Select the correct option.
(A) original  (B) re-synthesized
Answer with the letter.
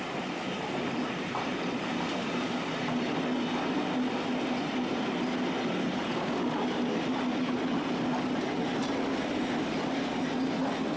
A